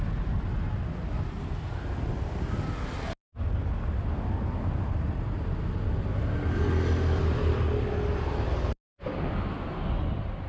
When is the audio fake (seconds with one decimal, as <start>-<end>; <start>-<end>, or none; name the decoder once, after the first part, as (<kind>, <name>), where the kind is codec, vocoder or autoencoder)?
none